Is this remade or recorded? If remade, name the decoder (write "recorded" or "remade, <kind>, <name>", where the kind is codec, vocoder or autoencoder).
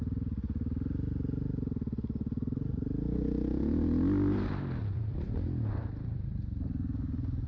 recorded